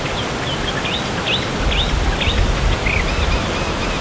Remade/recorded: recorded